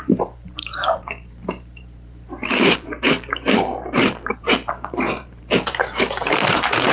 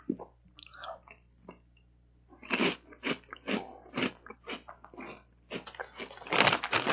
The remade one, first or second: first